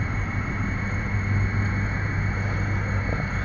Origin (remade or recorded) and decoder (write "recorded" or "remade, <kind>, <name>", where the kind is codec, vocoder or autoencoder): recorded